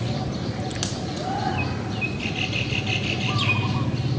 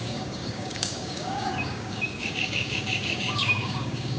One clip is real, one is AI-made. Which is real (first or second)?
first